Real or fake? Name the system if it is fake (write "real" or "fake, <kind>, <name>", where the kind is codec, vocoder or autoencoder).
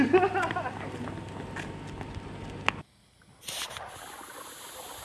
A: real